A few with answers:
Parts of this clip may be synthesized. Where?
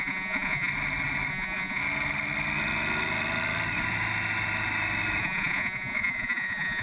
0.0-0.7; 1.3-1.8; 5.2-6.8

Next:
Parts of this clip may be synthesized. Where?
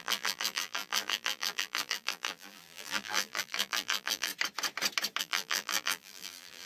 0.0-4.3; 5.2-6.7